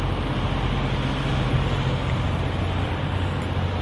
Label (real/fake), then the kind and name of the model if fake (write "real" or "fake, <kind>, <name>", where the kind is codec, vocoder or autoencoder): real